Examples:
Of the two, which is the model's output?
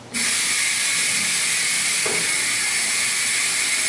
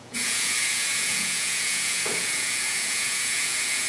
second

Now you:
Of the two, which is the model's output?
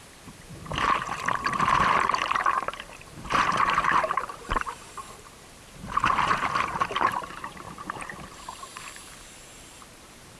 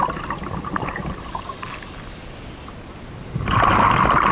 first